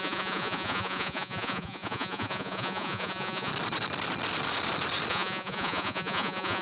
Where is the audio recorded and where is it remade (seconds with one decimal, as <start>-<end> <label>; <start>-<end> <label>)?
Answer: 0.0-3.5 remade; 3.5-5.1 recorded; 5.1-6.6 remade